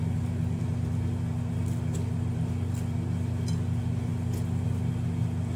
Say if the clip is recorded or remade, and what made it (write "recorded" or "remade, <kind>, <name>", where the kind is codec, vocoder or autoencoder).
recorded